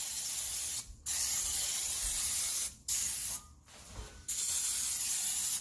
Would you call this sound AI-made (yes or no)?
no